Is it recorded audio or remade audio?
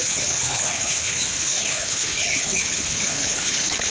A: remade